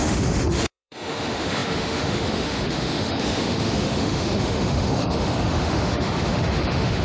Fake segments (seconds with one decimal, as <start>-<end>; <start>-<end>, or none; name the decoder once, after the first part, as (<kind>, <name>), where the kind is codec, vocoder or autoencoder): 0.0-7.0 (autoencoder, DAC-VAE)